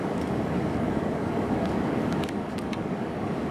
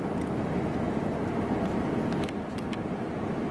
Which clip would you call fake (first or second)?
first